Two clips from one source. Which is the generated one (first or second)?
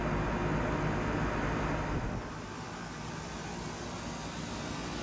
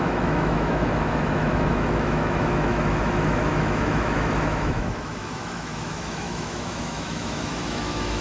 second